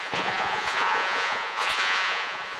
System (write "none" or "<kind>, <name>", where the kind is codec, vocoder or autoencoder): vocoder, Vocos